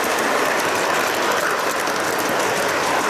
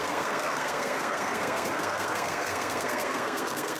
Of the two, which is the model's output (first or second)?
second